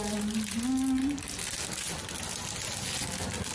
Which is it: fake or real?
real